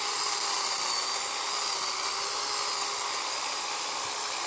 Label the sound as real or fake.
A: real